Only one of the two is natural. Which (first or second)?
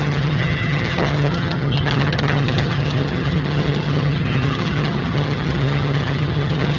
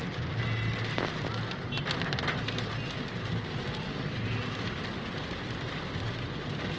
second